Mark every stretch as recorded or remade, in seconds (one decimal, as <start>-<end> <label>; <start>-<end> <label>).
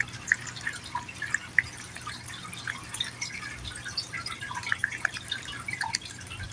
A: 0.0-1.4 recorded; 1.4-2.4 remade; 2.4-4.8 recorded; 4.8-5.7 remade; 5.7-6.5 recorded